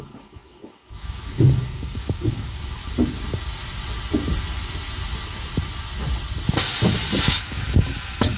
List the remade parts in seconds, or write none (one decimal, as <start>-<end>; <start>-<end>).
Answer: 0.0-2.8; 7.2-8.4